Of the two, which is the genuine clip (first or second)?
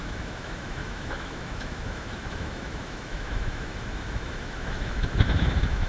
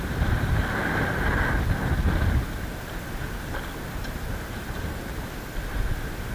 second